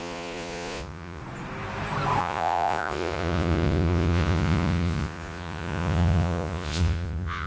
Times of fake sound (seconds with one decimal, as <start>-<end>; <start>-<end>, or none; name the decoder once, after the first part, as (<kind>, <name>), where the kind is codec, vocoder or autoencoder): 0.0-1.2 (vocoder, Vocos); 2.2-7.5